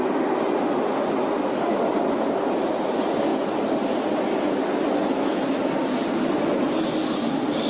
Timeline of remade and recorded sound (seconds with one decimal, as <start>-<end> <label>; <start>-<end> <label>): 0.0-7.7 recorded